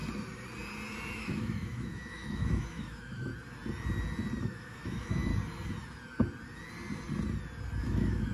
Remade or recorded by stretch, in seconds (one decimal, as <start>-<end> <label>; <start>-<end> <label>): 0.0-1.1 recorded; 1.1-3.3 remade; 3.3-4.4 recorded; 4.4-5.3 remade; 5.3-7.8 recorded; 7.8-8.3 remade